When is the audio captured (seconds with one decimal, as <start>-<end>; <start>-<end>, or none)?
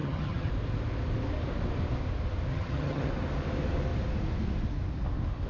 0.5-2.5; 3.1-5.5